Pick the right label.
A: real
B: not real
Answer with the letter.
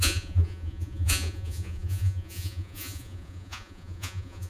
B